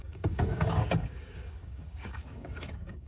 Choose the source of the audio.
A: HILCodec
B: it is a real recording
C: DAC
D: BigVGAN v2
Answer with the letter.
C